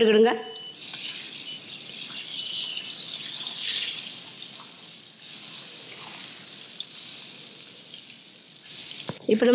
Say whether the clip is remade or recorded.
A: recorded